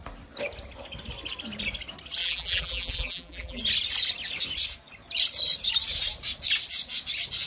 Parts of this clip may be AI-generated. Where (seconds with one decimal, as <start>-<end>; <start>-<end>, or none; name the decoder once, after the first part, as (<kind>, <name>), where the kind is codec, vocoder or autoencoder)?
2.2-3.6 (vocoder, BigVGAN v2)